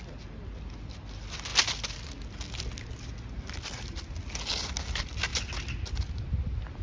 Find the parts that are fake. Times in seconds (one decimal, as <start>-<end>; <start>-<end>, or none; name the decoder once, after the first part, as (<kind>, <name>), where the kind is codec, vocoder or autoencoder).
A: none

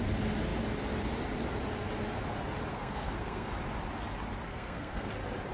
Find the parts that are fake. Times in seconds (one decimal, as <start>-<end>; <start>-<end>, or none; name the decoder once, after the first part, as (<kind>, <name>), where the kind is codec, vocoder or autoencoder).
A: 2.7-3.5 (codec, SNAC); 4.5-5.1

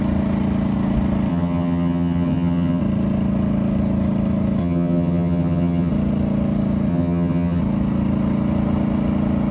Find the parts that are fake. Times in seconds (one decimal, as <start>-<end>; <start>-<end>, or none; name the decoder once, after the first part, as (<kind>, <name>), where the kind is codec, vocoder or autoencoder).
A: 1.3-2.8 (vocoder, HiFi-GAN); 4.6-5.9; 6.9-7.6